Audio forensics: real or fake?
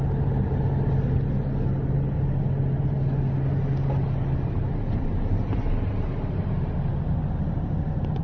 real